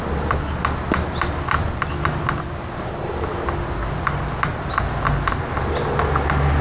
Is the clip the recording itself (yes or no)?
yes